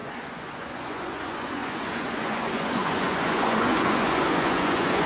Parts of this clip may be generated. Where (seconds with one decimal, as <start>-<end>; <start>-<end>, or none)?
0.0-5.1